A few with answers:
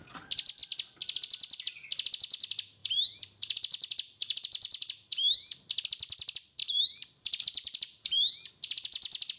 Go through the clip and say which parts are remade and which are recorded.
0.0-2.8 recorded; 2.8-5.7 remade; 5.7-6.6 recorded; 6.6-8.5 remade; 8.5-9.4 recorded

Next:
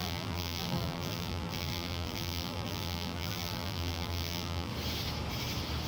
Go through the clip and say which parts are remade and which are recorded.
0.0-4.7 remade; 4.7-5.9 recorded

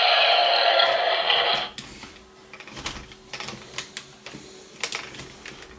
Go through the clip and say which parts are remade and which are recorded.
0.0-5.8 recorded

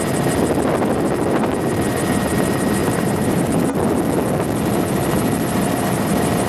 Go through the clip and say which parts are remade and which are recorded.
0.0-2.8 recorded; 2.8-3.5 remade; 3.5-6.5 recorded

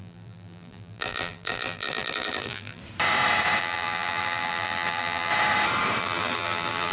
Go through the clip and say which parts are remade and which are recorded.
0.0-2.8 remade; 2.8-3.6 recorded; 3.6-5.3 remade; 5.3-6.0 recorded; 6.0-6.9 remade

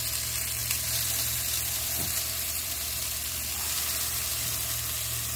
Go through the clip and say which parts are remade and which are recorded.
0.0-0.6 recorded; 0.6-3.8 remade; 3.8-5.4 recorded